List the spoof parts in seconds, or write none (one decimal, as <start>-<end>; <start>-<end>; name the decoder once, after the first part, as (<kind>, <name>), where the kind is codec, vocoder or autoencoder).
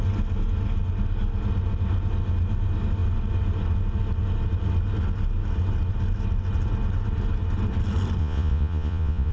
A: 8.2-9.3 (vocoder, Vocos)